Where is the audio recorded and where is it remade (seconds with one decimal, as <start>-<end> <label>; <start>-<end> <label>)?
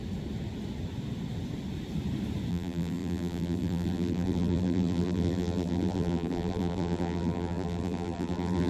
0.0-2.5 recorded; 2.5-8.7 remade